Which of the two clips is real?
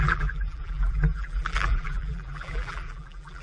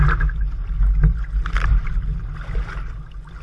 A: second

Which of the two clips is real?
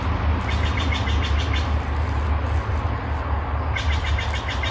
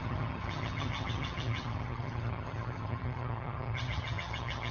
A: first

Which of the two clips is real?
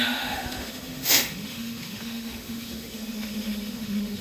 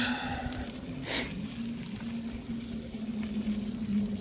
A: second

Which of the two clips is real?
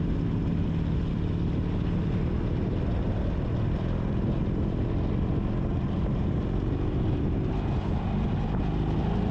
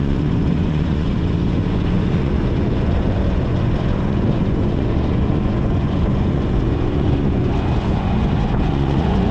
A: first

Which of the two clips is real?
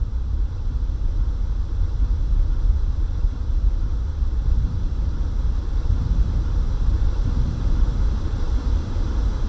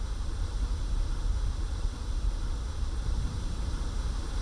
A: second